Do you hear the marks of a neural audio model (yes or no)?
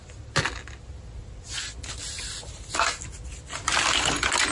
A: no